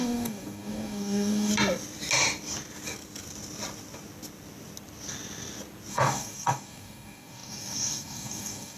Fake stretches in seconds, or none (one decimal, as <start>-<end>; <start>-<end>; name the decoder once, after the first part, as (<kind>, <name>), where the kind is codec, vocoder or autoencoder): 0.0-1.5 (codec, DAC); 5.9-8.8